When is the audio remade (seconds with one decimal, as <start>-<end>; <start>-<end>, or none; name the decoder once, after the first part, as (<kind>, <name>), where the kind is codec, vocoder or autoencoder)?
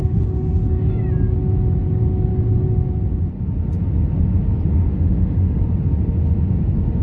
0.0-0.9 (autoencoder, DAC-VAE); 4.7-5.6